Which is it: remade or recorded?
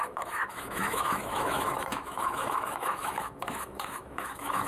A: remade